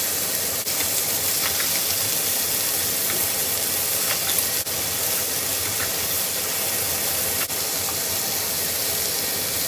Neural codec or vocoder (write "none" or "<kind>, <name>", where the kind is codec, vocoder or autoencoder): none